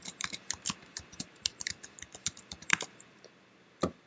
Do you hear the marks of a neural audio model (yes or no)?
yes